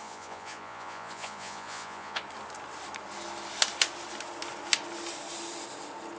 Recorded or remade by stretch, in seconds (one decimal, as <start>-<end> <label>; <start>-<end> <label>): 0.0-2.2 remade; 2.2-6.2 recorded

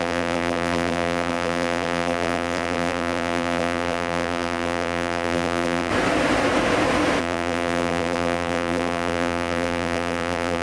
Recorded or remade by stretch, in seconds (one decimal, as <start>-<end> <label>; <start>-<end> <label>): 0.0-5.9 remade; 5.9-7.2 recorded; 7.2-10.6 remade

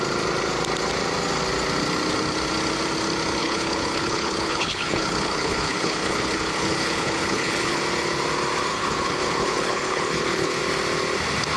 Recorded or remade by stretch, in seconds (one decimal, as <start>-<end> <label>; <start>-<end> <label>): 0.0-3.4 recorded; 3.4-7.8 remade; 7.8-8.7 recorded; 8.7-10.6 remade; 10.6-11.6 recorded

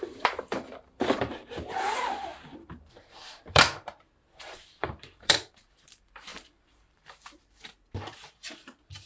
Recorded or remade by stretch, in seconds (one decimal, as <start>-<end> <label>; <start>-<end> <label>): 0.0-9.1 remade

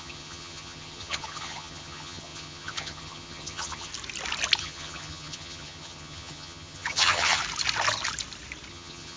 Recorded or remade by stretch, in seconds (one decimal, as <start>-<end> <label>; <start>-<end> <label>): 0.0-3.9 remade; 3.9-4.6 recorded; 4.6-7.4 remade; 7.4-8.7 recorded; 8.7-9.2 remade

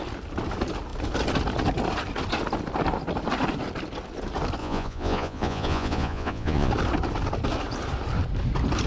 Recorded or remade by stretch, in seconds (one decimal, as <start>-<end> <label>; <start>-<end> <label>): 0.0-4.6 recorded; 4.6-6.7 remade; 6.7-8.9 recorded